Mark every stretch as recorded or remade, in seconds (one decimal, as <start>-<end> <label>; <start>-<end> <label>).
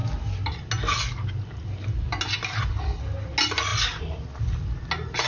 0.0-5.3 recorded